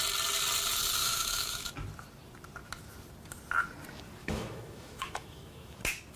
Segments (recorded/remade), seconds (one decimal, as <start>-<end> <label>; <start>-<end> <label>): 0.0-1.0 recorded; 1.0-1.7 remade; 1.7-4.2 recorded; 4.2-5.8 remade; 5.8-6.2 recorded